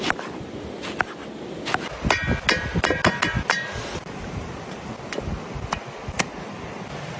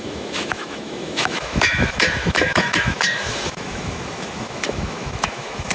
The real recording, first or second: first